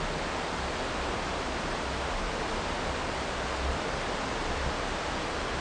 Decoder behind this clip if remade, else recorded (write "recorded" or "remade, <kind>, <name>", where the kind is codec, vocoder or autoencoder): recorded